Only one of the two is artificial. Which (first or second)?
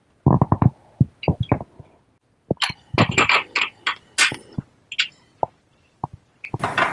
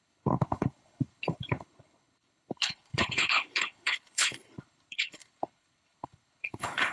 second